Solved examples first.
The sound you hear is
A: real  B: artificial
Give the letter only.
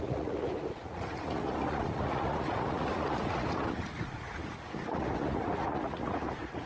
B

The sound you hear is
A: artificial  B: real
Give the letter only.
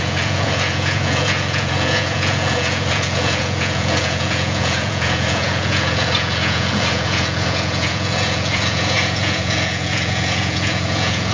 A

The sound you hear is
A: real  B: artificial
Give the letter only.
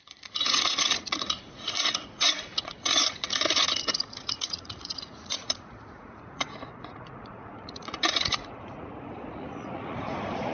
B